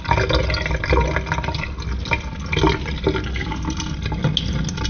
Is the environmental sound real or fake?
real